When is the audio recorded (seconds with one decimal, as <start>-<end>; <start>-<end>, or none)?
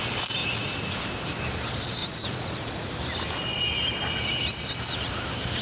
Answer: 0.0-0.4; 1.0-2.0; 2.9-5.6